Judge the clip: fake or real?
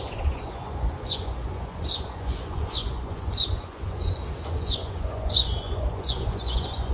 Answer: fake